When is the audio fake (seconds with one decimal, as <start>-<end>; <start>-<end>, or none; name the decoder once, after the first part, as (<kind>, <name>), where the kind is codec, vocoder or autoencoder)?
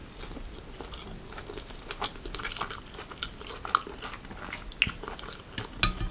none